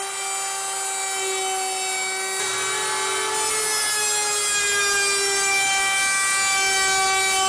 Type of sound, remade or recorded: recorded